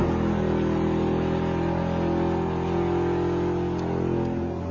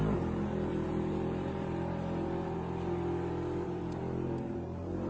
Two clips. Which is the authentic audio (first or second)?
first